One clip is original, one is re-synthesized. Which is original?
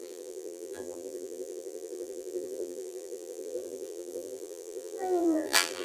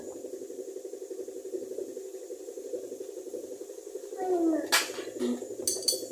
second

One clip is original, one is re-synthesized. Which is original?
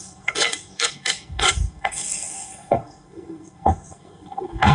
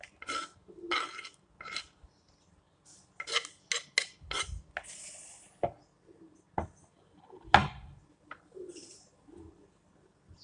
second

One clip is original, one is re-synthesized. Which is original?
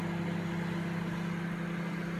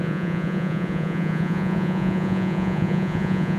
first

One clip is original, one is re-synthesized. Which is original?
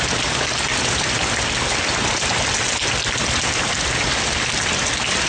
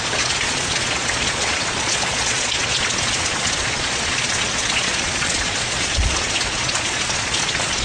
first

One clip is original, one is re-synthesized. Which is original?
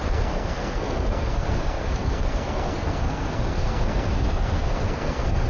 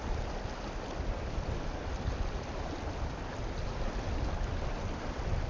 second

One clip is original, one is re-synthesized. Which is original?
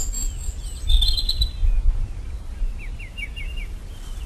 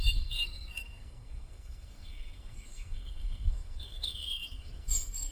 first